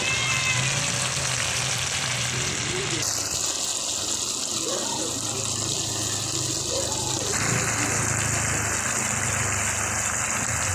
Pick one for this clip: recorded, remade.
recorded